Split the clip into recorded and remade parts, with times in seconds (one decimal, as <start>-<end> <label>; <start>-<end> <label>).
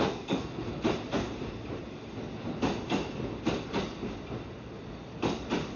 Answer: 0.0-0.6 remade; 0.6-5.8 recorded